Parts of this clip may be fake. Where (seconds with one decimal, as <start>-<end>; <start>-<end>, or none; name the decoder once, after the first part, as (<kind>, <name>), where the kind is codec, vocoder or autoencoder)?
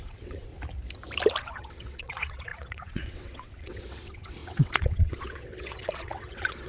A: 0.0-0.5 (vocoder, WaveNeXt); 1.4-6.7